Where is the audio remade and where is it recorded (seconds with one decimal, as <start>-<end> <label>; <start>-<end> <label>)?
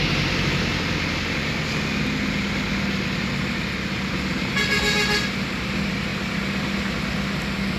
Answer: 0.0-7.8 recorded